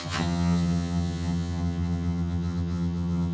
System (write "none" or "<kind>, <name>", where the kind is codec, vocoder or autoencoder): vocoder, HiFi-GAN